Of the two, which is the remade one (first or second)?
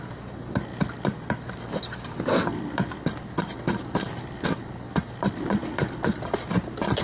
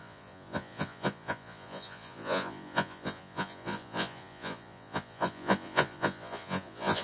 second